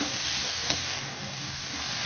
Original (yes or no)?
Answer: no